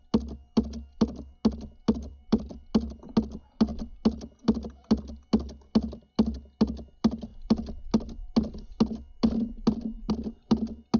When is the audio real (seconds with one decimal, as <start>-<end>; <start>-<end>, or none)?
0.0-2.1; 2.7-11.0